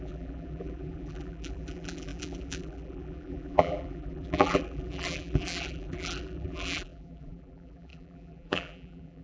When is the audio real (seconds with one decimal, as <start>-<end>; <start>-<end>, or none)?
none

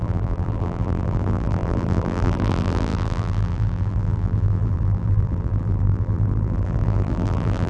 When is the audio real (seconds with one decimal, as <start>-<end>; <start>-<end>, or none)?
none

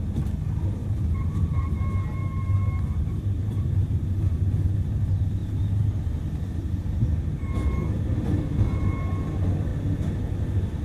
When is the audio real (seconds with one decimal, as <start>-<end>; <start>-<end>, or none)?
0.0-0.8; 1.7-10.8

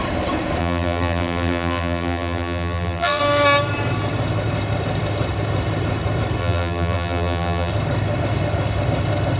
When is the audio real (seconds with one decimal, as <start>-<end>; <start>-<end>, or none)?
0.0-0.6; 3.2-6.4; 7.7-9.4

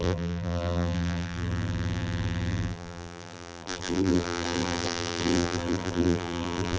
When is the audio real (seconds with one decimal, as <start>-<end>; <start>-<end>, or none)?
none

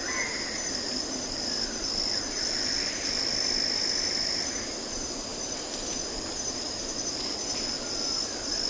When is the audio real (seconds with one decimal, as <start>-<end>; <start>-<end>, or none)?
0.0-8.7

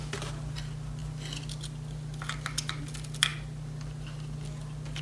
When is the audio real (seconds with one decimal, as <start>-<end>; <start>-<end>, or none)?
0.0-5.0

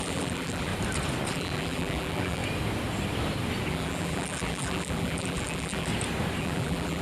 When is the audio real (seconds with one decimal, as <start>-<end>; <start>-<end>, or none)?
0.7-1.3; 2.4-3.7; 5.9-6.4